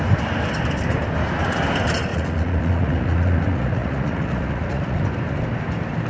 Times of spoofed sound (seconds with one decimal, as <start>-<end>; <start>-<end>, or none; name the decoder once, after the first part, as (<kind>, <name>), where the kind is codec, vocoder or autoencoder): 2.1-5.0 (vocoder, Vocos)